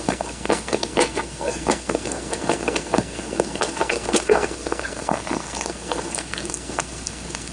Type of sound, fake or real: fake